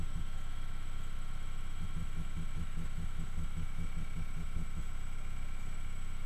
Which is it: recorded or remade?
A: remade